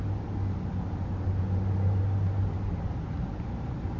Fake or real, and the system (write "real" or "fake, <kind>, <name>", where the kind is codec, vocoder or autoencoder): real